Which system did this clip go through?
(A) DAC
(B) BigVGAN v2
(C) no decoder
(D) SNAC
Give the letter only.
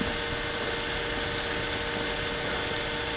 C